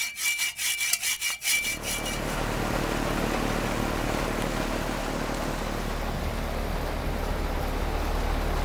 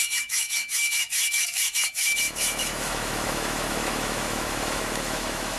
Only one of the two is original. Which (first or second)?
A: first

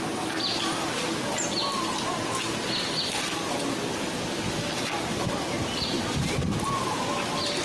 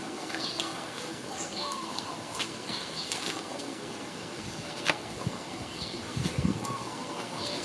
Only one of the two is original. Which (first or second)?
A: first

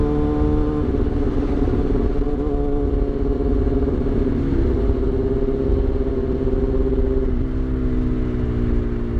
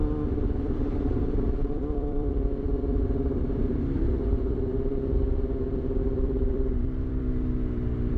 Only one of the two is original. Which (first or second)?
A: first